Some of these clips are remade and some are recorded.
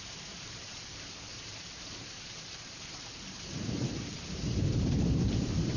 remade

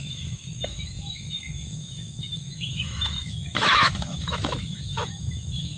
remade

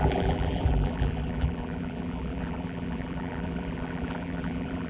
remade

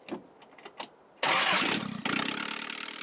recorded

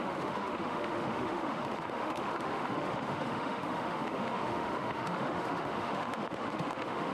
remade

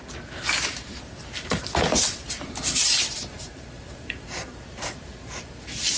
remade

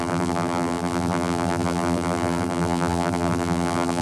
remade